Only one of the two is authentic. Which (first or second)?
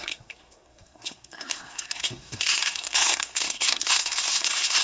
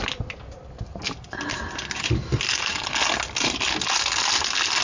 second